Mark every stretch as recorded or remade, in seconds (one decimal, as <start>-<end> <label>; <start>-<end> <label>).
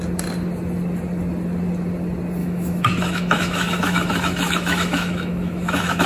0.0-2.4 recorded; 2.4-6.1 remade